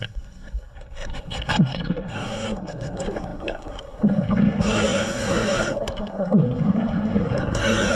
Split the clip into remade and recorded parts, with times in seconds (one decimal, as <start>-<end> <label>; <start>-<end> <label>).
0.0-8.0 remade